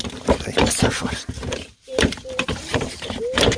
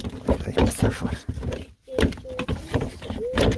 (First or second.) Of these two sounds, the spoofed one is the first